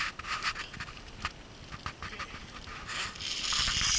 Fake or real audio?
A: real